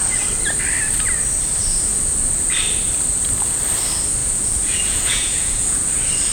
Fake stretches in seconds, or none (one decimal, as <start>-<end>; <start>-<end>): 4.2-5.8